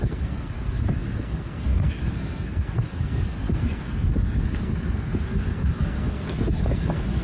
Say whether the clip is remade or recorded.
remade